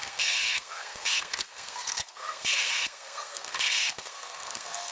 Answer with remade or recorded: remade